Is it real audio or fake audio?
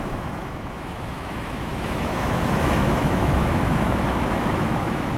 fake